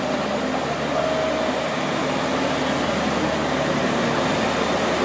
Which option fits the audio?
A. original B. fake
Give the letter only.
A